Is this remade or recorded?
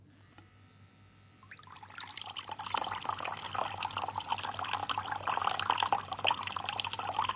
recorded